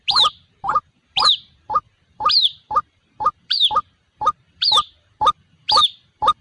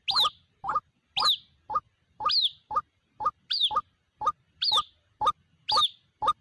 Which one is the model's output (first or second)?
first